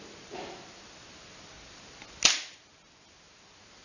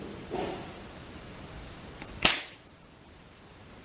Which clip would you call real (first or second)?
first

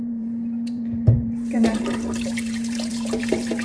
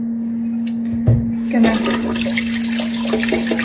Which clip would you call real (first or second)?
second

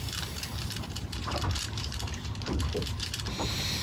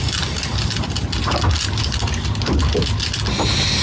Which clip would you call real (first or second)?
second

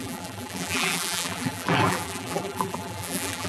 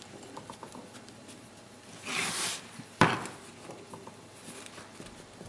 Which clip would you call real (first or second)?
second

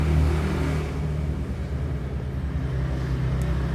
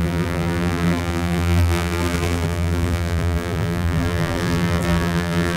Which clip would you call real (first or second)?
first